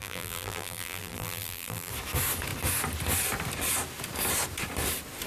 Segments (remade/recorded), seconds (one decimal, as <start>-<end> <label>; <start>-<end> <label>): 0.0-1.9 remade; 1.9-5.3 recorded